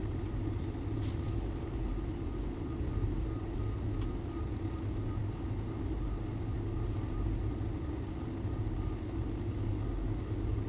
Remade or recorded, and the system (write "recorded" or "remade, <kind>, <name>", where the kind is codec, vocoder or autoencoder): recorded